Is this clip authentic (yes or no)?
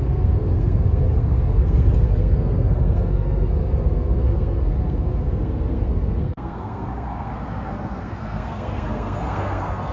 no